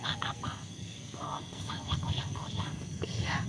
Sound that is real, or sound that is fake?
fake